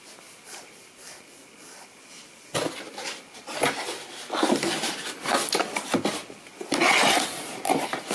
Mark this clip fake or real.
real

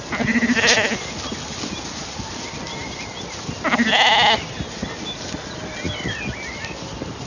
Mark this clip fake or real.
real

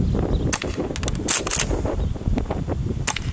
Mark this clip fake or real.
real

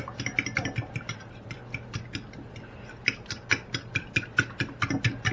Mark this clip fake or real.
real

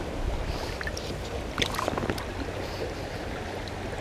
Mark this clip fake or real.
real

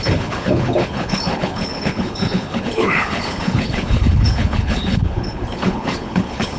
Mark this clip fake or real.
fake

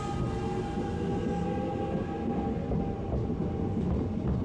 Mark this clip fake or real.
real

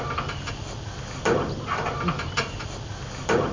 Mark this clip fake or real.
real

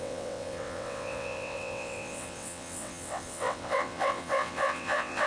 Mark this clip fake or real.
fake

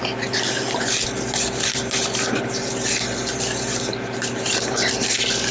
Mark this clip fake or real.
real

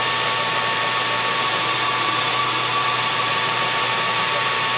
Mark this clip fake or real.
fake